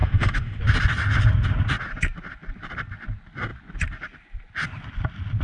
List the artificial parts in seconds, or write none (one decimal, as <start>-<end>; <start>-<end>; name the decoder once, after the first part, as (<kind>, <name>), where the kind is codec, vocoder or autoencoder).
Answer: 0.0-0.6 (autoencoder, DAC-VAE)